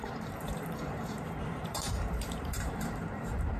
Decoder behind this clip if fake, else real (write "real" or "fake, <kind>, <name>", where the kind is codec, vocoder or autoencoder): fake, vocoder, BigVGAN v2